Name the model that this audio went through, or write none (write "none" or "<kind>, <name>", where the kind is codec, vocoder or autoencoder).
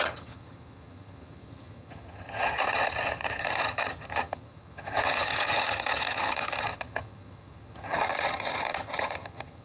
vocoder, HiFi-GAN